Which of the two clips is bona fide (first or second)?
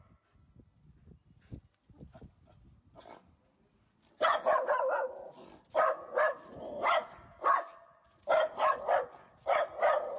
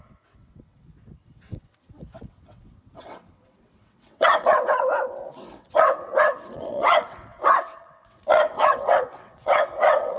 first